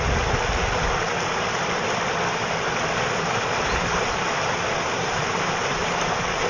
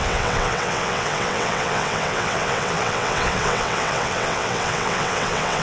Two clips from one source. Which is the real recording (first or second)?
first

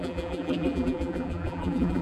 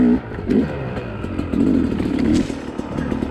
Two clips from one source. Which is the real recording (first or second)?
second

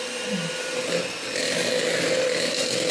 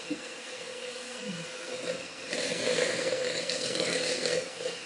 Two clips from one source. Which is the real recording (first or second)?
first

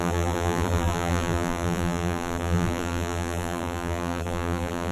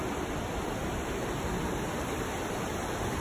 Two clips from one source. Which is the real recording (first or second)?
second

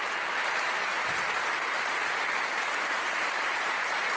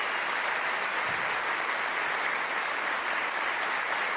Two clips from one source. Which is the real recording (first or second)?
second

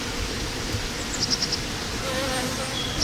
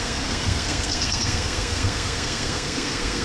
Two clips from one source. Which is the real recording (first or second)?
first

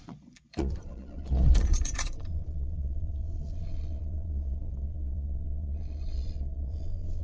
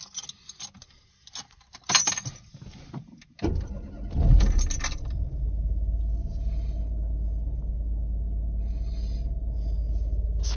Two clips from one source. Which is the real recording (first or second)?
second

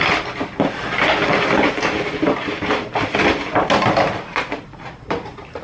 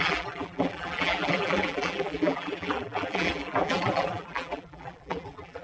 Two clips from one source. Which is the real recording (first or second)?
first